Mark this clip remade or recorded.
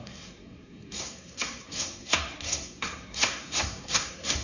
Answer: remade